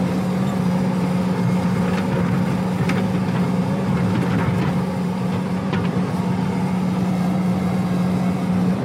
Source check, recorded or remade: recorded